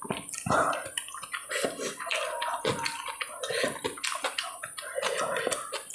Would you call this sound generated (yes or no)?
no